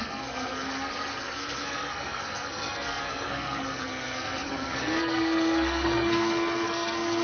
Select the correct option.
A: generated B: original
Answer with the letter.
A